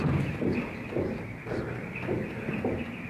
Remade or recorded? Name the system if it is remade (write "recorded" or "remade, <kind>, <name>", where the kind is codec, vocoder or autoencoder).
recorded